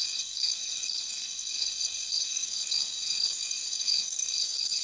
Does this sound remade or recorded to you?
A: remade